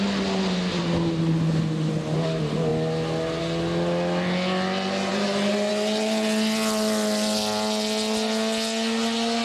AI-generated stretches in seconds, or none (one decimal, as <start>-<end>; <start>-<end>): none